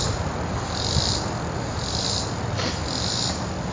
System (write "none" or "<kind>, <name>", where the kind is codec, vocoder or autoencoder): none